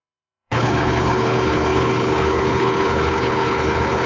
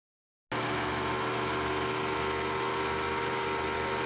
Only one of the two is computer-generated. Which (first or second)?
first